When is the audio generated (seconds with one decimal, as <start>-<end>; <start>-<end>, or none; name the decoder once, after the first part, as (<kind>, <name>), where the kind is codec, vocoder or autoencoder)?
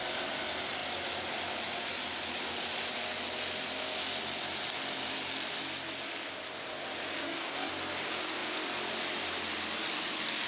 7.2-7.7 (codec, DAC)